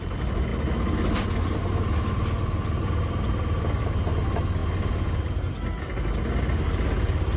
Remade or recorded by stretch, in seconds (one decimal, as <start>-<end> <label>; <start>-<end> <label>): 0.0-7.4 recorded